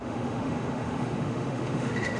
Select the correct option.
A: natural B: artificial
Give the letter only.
B